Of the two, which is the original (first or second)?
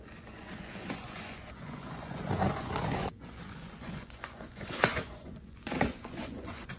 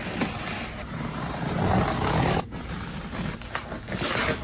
second